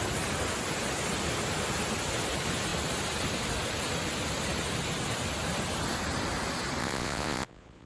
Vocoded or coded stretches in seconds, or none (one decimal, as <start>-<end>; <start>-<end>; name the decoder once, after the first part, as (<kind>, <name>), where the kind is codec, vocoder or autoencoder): 6.8-7.9 (vocoder, Vocos)